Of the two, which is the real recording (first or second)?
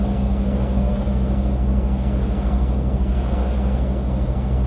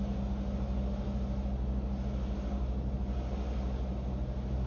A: second